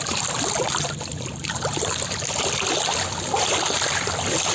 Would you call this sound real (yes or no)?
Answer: yes